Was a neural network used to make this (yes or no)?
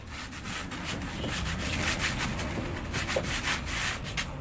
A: no